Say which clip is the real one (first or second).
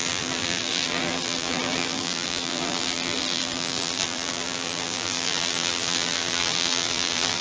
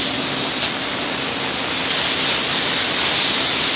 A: second